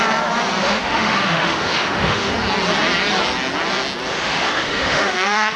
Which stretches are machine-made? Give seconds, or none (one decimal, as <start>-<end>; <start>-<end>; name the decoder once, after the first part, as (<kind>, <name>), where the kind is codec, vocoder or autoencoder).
0.6-2.3 (autoencoder, DAC-VAE); 4.1-5.6